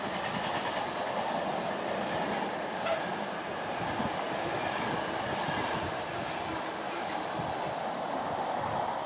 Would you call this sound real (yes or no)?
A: yes